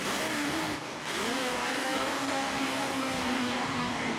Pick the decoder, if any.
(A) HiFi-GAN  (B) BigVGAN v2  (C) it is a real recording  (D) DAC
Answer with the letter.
D